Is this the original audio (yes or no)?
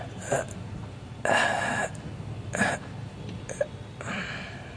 no